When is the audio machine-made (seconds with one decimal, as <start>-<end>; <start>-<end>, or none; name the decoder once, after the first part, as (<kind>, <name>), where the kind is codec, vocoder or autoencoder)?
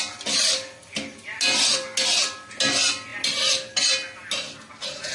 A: none